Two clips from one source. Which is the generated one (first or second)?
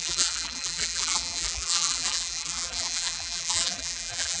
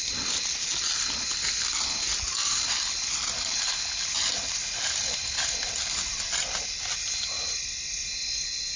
first